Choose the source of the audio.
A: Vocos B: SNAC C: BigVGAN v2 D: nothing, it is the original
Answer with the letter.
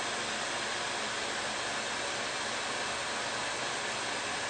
D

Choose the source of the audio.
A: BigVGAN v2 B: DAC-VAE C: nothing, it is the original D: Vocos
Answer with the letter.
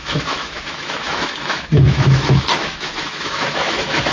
B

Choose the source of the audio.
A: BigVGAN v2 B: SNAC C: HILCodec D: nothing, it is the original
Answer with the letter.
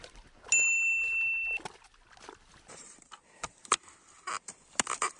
D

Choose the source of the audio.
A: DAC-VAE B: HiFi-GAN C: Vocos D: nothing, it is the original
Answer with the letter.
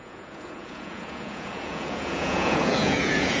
C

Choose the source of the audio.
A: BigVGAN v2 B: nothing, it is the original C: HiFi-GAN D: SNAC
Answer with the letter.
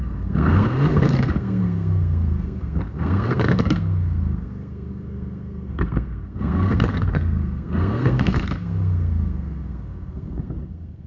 D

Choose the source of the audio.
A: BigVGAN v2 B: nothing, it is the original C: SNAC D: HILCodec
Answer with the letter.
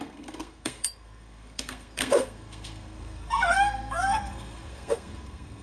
C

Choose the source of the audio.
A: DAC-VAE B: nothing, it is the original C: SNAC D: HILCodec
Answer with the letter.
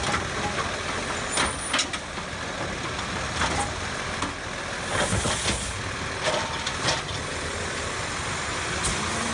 B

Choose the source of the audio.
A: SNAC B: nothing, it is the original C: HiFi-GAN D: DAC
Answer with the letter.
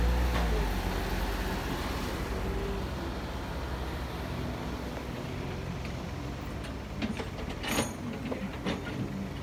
B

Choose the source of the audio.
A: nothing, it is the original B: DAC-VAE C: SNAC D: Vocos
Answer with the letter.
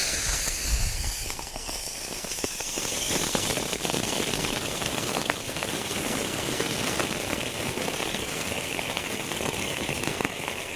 C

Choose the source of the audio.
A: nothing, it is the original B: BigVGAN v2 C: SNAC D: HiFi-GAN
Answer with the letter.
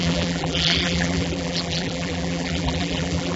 B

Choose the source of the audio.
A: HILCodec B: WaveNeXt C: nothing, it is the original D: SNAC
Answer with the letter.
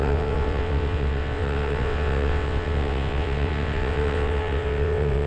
B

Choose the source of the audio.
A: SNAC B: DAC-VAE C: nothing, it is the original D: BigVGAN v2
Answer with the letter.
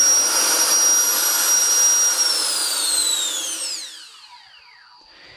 C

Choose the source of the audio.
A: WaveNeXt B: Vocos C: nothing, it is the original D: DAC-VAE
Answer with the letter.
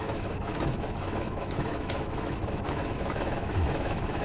D